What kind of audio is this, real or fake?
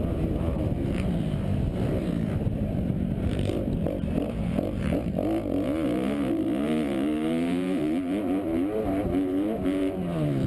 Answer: fake